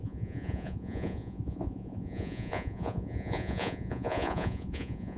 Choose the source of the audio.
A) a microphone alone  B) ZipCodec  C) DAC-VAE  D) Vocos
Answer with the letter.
D